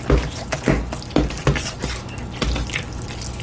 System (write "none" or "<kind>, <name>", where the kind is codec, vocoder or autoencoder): none